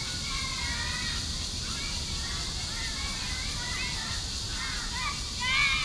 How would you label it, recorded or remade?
recorded